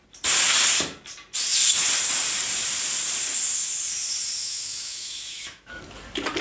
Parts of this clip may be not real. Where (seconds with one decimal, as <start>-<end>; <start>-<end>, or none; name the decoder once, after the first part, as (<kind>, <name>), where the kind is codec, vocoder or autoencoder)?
4.4-5.8 (autoencoder, DAC-VAE)